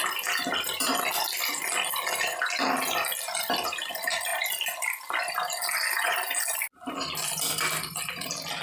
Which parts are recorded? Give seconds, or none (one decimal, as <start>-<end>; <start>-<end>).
0.0-8.6